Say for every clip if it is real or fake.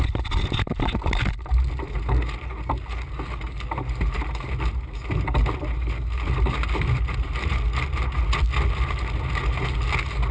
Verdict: real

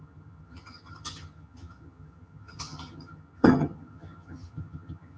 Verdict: fake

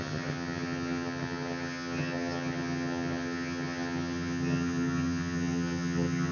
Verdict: fake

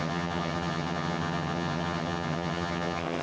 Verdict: fake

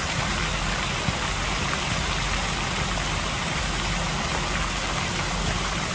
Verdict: real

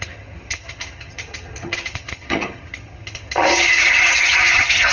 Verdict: fake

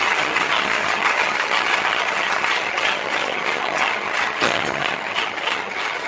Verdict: fake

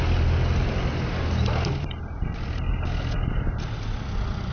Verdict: real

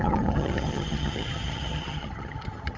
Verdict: fake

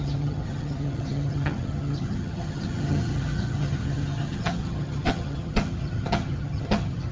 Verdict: fake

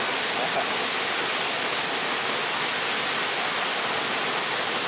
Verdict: real